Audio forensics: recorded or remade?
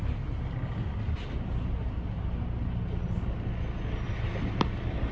recorded